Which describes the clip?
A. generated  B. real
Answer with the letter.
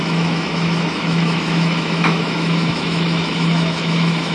A